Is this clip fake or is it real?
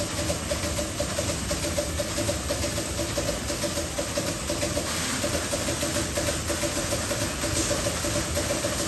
real